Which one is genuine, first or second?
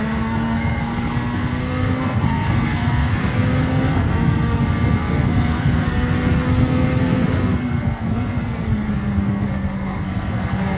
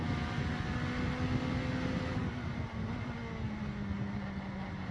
second